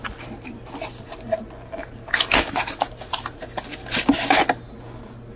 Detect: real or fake real